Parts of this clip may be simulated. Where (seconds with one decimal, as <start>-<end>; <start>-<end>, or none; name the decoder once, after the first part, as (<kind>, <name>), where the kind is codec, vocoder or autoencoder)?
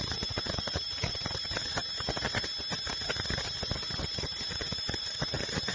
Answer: 0.0-1.8 (vocoder, BigVGAN v2); 4.0-5.7